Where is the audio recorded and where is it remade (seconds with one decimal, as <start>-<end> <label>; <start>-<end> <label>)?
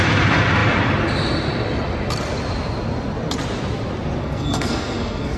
0.0-4.2 recorded; 4.2-5.4 remade